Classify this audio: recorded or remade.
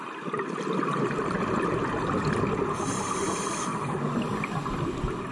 remade